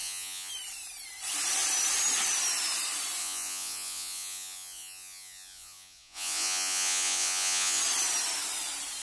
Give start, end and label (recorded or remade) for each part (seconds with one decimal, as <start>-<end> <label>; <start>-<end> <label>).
0.0-0.5 remade; 0.5-3.2 recorded; 3.2-7.8 remade; 7.8-9.0 recorded